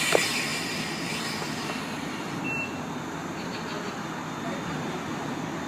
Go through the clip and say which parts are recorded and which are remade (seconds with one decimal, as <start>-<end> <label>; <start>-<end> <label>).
0.0-0.5 recorded; 0.5-1.1 remade; 1.1-1.6 recorded; 1.6-5.0 remade; 5.0-5.7 recorded